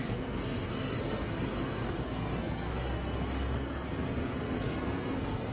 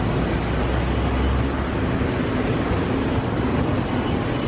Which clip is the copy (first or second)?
first